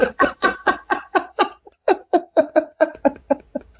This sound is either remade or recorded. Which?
remade